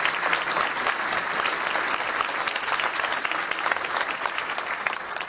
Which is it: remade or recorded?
recorded